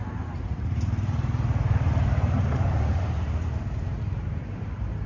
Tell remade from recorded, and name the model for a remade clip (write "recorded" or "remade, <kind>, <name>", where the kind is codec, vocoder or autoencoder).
remade, vocoder, BigVGAN v2